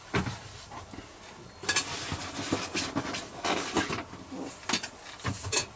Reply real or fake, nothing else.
real